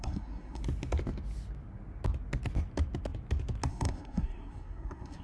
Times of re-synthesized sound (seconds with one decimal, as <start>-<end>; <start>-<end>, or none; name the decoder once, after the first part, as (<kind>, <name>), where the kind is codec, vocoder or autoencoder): 0.0-0.6 (codec, SNAC); 3.7-5.2